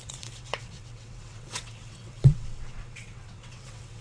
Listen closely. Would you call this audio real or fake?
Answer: fake